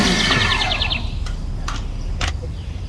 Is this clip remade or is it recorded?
recorded